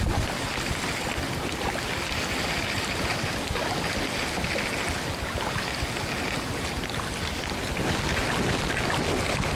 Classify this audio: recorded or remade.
recorded